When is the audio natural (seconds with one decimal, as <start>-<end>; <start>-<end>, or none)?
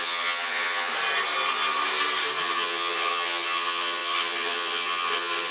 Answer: 0.9-2.4